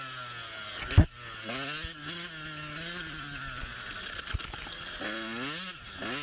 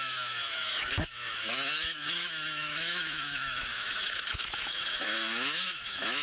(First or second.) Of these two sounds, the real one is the first